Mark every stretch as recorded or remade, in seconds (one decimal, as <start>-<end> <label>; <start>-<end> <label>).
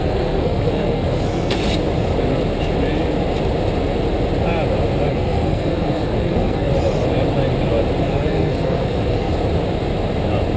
0.0-1.6 remade; 1.6-5.1 recorded; 5.1-6.7 remade; 6.7-8.0 recorded; 8.0-9.3 remade; 9.3-10.6 recorded